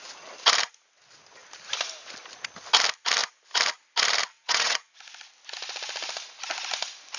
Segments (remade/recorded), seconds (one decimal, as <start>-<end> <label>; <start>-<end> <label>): 0.0-4.3 recorded; 4.3-4.9 remade; 4.9-7.2 recorded